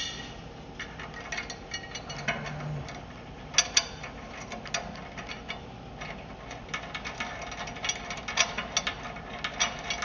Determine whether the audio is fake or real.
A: real